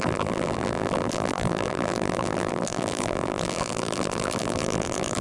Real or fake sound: fake